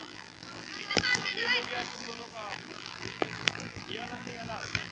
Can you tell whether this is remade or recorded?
remade